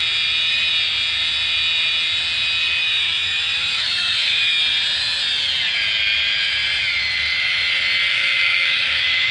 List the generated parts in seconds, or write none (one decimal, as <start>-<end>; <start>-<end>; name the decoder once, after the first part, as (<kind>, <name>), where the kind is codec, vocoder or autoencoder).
2.8-4.6 (autoencoder, DAC-VAE); 8.1-9.3